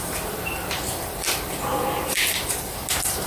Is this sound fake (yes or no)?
no